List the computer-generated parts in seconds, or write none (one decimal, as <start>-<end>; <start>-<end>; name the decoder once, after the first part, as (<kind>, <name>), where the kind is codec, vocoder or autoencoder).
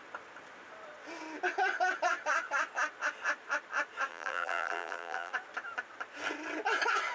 4.1-5.3 (vocoder, BigVGAN v2)